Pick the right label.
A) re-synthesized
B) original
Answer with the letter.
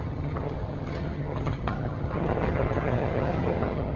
A